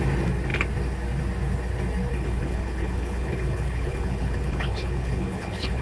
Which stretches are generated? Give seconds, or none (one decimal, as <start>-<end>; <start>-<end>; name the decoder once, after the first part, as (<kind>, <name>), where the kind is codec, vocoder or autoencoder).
2.1-5.8 (codec, HILCodec)